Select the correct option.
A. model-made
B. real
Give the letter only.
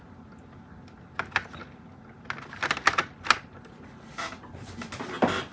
B